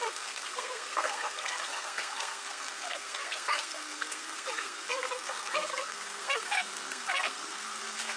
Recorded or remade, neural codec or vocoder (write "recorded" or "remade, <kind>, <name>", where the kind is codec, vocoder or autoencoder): remade, codec, SNAC